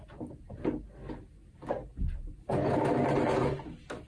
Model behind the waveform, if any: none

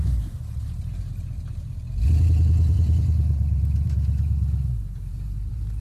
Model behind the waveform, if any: vocoder, BigVGAN v2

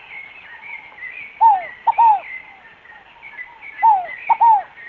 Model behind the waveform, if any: none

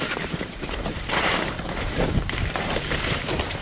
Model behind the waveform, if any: vocoder, BigVGAN v2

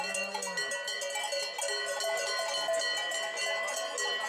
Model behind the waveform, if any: none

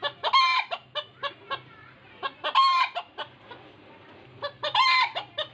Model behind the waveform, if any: none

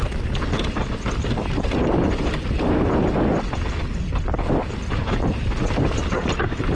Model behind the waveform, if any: none